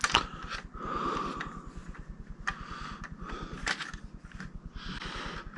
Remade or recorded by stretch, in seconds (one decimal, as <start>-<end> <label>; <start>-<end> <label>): 0.0-5.6 recorded